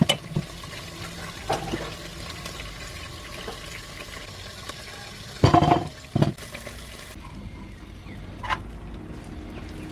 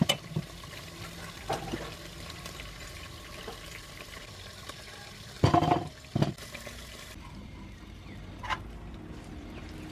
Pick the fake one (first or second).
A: second